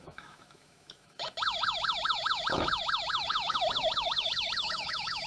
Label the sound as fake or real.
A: fake